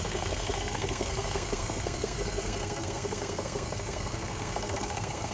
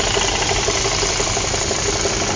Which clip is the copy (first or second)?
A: first